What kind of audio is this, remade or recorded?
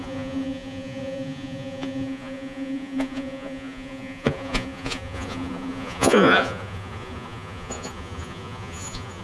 remade